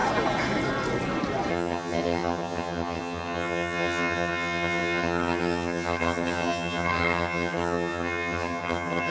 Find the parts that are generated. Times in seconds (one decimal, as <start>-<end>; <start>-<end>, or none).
1.5-9.1